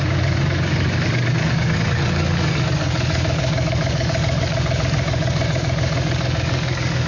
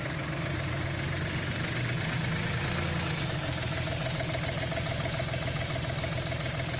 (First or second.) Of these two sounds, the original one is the second